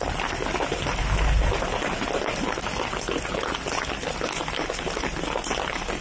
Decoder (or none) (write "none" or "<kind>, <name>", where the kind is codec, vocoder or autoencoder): none